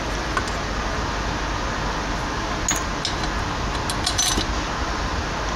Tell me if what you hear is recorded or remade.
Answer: recorded